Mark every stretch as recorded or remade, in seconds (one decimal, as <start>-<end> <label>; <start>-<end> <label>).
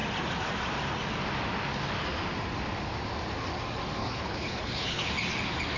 0.0-4.0 recorded; 4.0-5.1 remade; 5.1-5.8 recorded